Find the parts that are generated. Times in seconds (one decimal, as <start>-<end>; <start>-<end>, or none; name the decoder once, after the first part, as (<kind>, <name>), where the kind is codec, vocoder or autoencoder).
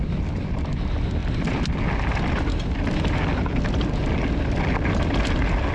none